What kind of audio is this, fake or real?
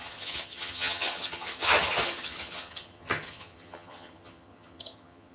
fake